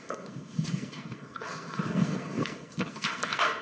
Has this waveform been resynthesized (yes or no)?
yes